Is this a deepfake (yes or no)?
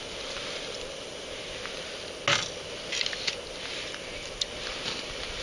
no